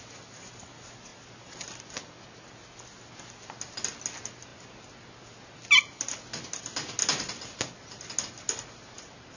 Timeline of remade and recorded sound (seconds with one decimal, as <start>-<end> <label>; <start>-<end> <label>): 0.0-9.4 recorded